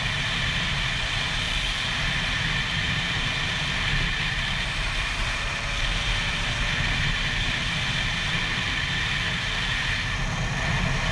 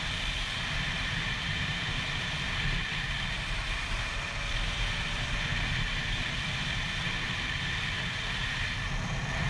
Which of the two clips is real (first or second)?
first